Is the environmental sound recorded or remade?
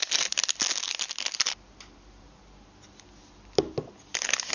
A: recorded